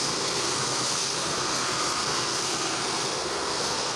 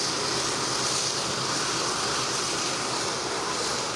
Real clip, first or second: second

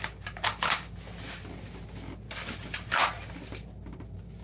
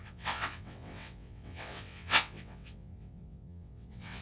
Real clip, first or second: first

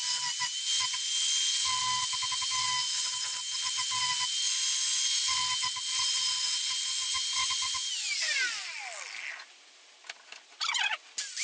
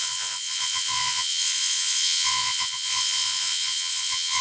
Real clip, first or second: first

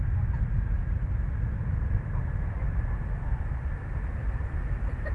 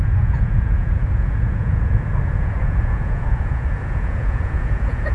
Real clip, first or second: first